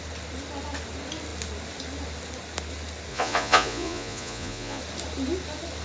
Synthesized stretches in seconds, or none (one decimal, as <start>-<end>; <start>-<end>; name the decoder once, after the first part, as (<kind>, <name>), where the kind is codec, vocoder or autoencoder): 3.1-4.8 (vocoder, Vocos)